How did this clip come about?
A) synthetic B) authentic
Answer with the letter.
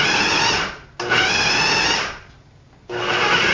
B